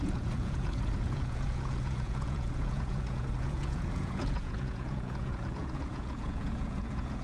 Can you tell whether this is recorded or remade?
remade